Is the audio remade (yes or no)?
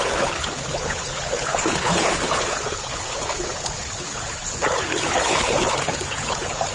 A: yes